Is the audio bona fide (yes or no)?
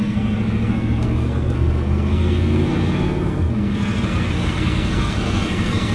no